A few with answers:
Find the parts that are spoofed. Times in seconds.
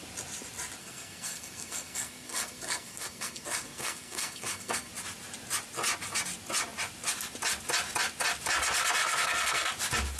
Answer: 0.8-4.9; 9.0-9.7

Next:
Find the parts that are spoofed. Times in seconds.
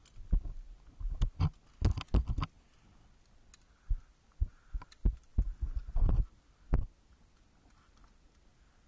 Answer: 5.3-6.5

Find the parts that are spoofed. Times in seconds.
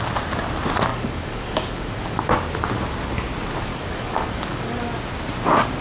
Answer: 0.9-2.2; 3.7-4.8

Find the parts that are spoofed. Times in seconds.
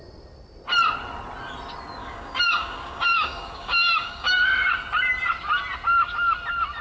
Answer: 2.0-4.3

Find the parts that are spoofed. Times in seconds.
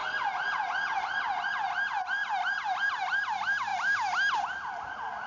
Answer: none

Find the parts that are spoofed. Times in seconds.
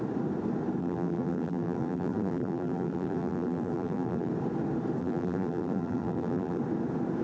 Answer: 0.8-4.3; 5.0-6.6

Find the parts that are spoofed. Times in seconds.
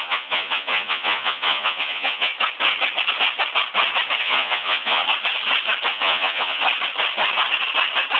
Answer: 0.0-2.3; 4.2-5.0; 5.9-6.6